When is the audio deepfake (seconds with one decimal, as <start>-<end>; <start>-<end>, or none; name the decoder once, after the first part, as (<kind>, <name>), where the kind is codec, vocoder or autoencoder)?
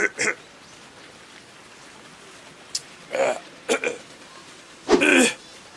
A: 2.8-4.3 (vocoder, BigVGAN v2); 5.1-5.8